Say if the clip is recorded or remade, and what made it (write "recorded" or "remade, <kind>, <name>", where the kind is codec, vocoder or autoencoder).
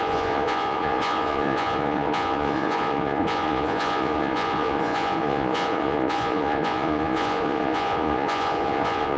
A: remade, vocoder, Vocos